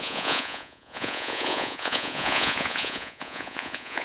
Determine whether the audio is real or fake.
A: fake